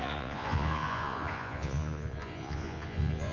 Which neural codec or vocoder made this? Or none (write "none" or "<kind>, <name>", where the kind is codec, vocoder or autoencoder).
vocoder, Vocos